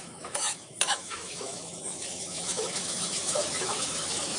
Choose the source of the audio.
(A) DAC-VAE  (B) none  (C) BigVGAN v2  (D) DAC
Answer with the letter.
A